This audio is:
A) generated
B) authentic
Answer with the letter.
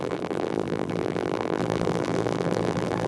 A